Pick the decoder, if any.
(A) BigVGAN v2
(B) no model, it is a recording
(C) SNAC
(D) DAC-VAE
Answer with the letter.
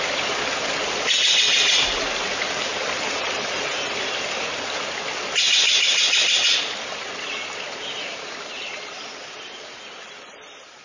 B